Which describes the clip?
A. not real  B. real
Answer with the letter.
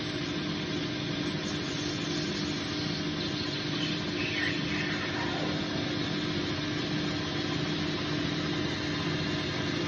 B